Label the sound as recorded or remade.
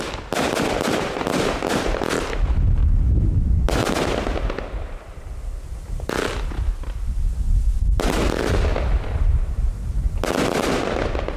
recorded